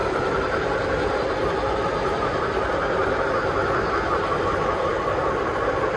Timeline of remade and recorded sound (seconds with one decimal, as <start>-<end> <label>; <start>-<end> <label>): 0.0-3.2 remade; 3.2-4.9 recorded; 4.9-5.5 remade; 5.5-6.0 recorded